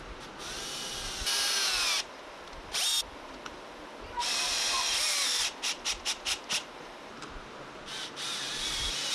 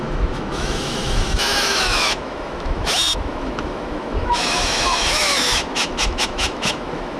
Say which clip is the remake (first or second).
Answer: second